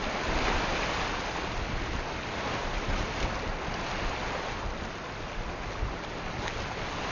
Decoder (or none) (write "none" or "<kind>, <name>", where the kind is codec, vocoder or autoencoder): none